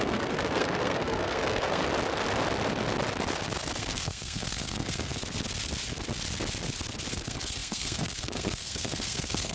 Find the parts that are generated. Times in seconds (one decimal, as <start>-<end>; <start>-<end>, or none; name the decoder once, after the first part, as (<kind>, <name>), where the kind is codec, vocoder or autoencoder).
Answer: 0.0-1.8 (codec, SNAC); 3.8-5.2; 7.1-9.5